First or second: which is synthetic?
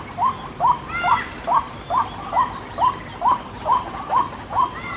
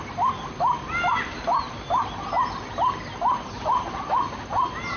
first